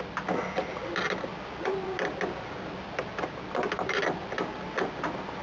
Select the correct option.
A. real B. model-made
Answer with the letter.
A